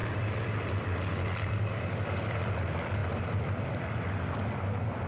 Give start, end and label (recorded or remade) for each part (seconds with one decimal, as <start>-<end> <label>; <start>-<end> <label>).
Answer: 0.0-5.1 remade